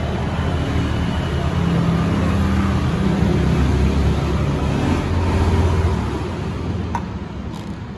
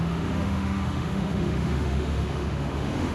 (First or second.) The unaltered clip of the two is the first